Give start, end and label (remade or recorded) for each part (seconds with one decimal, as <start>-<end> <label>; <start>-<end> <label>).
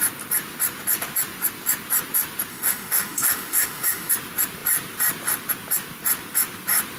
0.0-2.5 recorded; 2.5-4.1 remade; 4.1-7.0 recorded